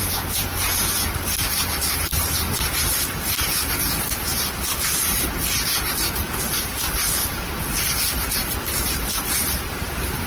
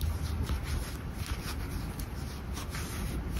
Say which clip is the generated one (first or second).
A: first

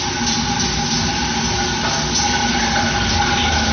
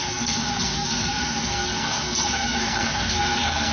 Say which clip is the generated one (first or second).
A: second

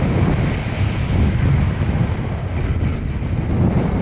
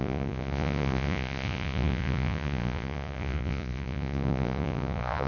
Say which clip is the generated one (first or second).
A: second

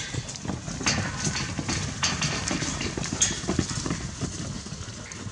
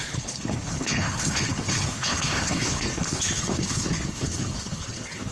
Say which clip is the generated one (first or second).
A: second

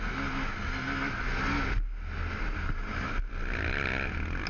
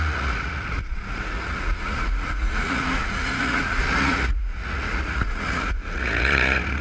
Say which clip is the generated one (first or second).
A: second